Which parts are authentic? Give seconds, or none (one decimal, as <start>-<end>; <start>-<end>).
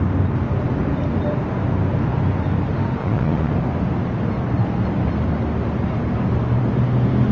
0.0-3.0; 3.5-7.3